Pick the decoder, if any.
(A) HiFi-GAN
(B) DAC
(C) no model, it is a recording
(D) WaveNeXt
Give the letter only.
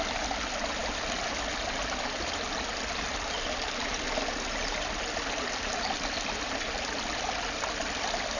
C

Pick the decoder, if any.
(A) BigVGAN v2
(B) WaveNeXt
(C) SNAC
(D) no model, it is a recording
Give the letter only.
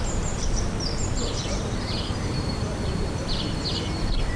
A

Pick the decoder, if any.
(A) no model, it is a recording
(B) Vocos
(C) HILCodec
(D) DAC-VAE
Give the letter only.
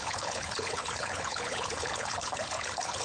C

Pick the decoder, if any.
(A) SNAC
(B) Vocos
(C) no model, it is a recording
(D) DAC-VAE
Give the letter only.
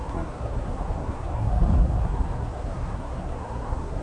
A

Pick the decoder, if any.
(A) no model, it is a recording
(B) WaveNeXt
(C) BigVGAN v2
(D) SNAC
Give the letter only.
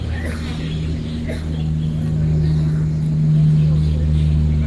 A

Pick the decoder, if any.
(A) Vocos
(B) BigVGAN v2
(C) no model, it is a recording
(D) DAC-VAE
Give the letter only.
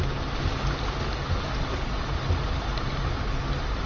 C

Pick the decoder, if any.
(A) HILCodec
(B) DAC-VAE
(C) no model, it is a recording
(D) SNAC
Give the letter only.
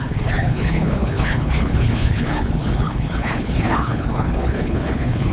A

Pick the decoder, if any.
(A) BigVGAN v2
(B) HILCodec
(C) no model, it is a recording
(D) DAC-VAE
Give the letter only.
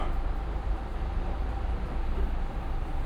C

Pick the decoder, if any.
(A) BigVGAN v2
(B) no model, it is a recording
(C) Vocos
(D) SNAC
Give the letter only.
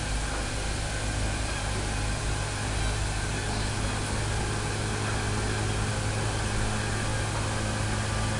B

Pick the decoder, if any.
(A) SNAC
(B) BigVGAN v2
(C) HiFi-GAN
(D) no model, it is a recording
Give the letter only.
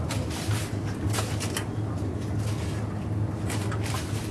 D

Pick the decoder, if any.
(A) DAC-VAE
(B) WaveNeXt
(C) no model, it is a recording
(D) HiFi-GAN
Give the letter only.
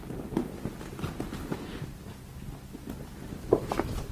C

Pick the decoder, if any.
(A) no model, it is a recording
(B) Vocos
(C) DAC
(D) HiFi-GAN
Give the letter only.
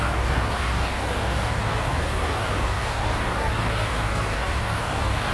C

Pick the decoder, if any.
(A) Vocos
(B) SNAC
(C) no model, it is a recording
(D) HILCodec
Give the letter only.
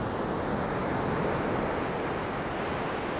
C